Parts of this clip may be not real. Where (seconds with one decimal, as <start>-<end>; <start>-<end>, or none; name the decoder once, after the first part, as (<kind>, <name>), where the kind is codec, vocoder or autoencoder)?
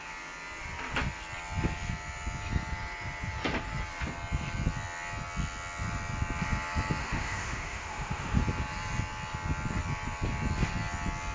7.0-8.4 (autoencoder, DAC-VAE)